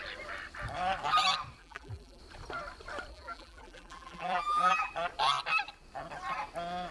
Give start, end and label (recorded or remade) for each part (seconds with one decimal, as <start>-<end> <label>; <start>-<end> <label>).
0.0-1.6 recorded; 1.6-2.2 remade; 2.2-3.1 recorded; 3.1-4.9 remade; 4.9-6.9 recorded